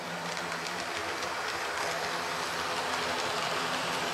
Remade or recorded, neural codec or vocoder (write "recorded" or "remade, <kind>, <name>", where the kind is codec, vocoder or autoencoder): recorded